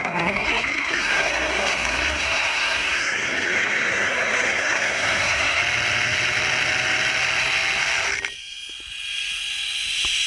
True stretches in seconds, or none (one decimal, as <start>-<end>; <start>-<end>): 5.6-10.3